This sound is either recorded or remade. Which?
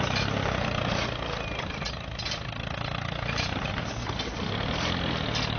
recorded